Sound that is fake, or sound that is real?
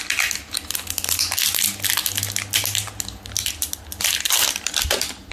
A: real